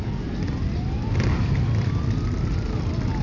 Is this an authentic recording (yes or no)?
yes